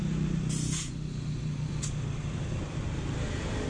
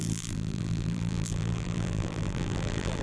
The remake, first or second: second